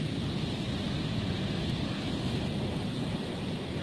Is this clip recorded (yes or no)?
yes